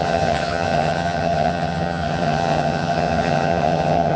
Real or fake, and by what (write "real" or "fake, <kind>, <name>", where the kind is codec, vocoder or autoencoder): fake, vocoder, HiFi-GAN